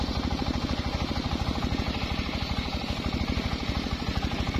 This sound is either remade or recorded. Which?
recorded